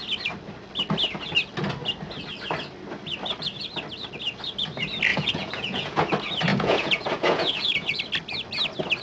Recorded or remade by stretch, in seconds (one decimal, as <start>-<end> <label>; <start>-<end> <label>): 0.0-5.1 recorded; 5.1-6.0 remade; 6.0-6.5 recorded; 6.5-8.0 remade; 8.0-9.0 recorded